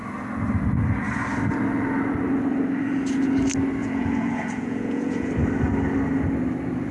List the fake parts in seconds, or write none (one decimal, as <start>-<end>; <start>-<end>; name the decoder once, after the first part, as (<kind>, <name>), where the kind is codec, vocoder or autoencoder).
3.8-5.3 (vocoder, Vocos)